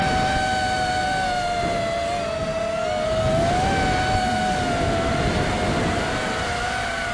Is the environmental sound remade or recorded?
recorded